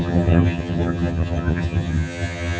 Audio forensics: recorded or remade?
remade